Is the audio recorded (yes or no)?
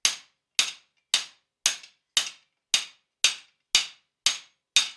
yes